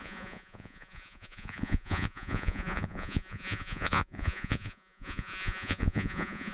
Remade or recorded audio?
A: remade